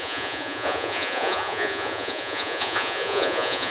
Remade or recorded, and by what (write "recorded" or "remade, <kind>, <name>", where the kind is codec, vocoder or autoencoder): remade, vocoder, Vocos